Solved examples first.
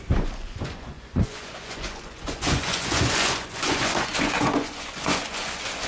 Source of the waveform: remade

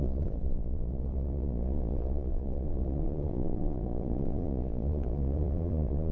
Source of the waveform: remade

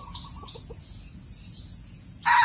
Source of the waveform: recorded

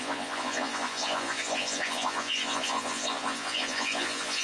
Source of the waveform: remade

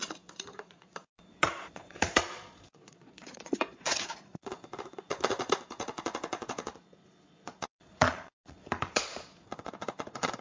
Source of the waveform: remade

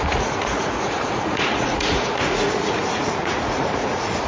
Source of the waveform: remade